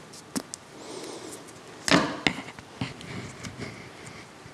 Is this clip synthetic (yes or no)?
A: no